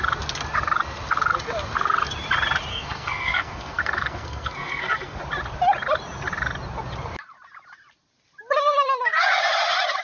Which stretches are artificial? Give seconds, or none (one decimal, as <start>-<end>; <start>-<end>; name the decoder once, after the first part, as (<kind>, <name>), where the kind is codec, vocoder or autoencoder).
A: 2.7-5.2 (codec, SNAC)